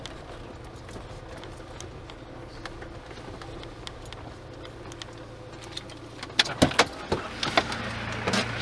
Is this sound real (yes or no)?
yes